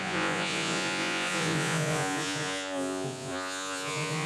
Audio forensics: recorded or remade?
remade